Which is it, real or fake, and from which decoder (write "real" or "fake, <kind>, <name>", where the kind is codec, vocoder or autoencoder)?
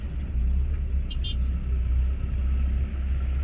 real